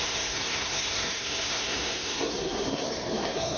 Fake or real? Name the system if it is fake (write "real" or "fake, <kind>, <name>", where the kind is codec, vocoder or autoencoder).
fake, codec, SNAC